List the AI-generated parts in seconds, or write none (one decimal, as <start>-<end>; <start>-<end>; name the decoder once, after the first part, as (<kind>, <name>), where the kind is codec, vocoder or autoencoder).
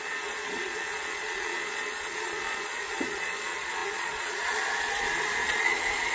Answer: 0.0-6.1 (vocoder, Vocos)